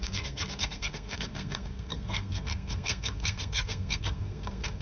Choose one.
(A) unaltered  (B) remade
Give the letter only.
B